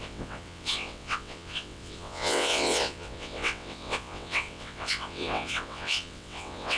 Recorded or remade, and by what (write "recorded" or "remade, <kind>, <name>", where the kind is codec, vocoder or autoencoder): remade, vocoder, WaveNeXt